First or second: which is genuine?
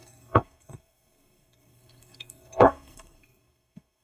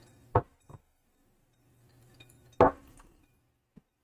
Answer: second